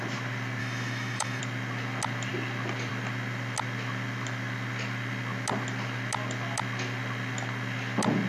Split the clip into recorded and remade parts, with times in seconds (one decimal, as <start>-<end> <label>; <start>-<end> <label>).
0.0-0.6 recorded; 0.6-1.4 remade; 1.4-8.3 recorded

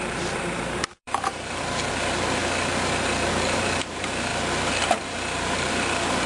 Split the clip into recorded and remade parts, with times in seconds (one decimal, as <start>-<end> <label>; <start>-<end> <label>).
0.0-2.4 remade; 2.4-3.3 recorded; 3.3-4.3 remade; 4.3-5.0 recorded; 5.0-6.3 remade